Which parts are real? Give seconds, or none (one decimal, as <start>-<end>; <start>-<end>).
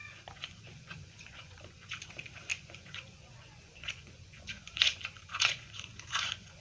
2.1-2.5